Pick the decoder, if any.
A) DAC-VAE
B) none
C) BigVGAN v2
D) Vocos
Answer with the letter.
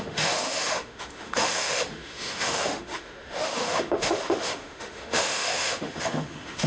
A